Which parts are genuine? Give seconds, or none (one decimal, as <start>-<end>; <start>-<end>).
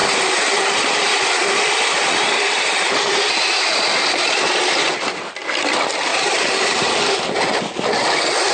4.3-6.1; 7.0-8.5